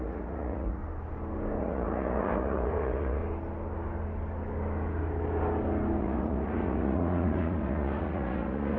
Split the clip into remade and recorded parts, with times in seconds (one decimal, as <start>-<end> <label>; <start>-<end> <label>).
0.0-0.8 remade; 0.8-1.6 recorded; 1.6-3.2 remade; 3.2-6.0 recorded; 6.0-8.8 remade